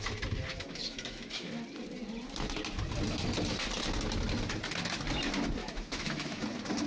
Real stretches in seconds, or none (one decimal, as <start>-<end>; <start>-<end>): 0.0-0.5; 1.5-5.6; 6.4-6.9